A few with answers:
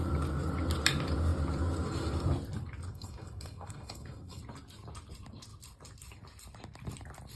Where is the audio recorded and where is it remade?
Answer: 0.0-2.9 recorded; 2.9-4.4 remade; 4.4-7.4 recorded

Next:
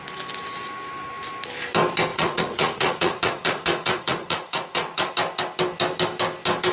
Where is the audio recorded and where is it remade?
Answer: 0.0-2.1 recorded; 2.1-5.1 remade; 5.1-6.7 recorded

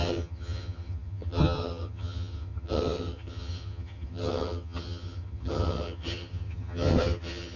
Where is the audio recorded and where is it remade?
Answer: 0.0-7.6 remade

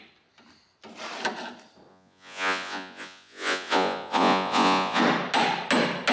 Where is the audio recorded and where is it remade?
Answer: 0.0-1.9 recorded; 1.9-5.0 remade; 5.0-6.1 recorded

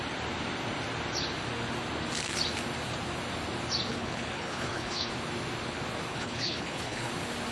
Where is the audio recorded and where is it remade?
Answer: 0.0-3.9 recorded; 3.9-5.1 remade; 5.1-6.1 recorded; 6.1-7.1 remade; 7.1-7.5 recorded